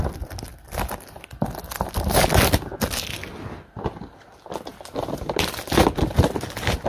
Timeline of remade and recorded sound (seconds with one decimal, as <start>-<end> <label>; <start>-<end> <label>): 0.0-6.9 recorded